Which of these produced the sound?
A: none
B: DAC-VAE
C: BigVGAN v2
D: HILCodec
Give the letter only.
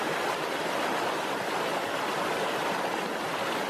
A